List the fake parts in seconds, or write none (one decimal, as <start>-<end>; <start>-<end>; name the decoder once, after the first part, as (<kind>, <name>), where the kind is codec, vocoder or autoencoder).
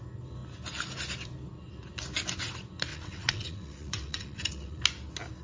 2.9-4.8 (vocoder, WaveNeXt)